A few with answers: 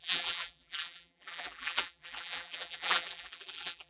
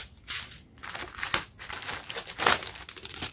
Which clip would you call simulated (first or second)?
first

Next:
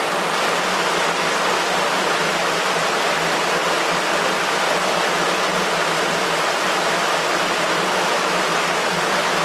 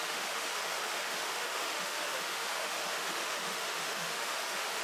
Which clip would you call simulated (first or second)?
second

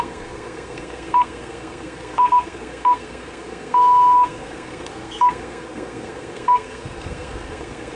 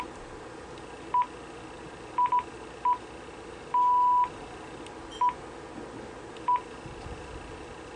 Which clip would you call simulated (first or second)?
first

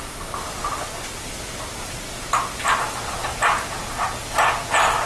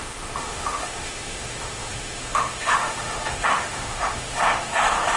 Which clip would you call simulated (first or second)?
second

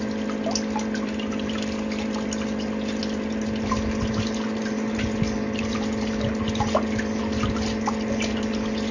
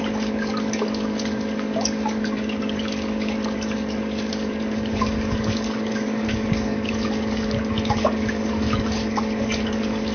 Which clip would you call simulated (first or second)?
second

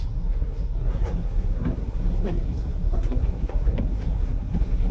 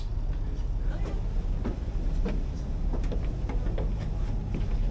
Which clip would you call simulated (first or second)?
first